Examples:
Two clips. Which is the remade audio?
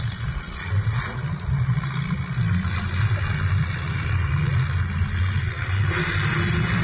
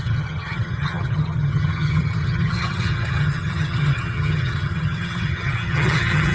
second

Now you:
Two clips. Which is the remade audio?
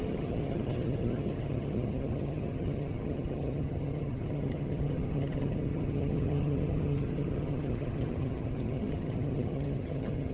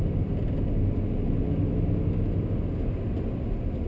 first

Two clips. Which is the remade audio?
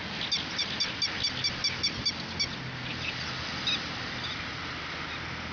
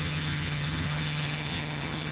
second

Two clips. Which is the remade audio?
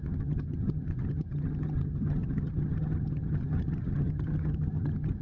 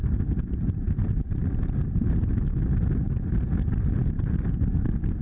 first